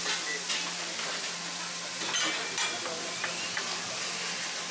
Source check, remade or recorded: recorded